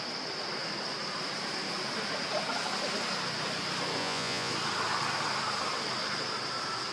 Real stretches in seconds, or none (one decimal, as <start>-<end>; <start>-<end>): 0.0-4.0; 4.5-6.9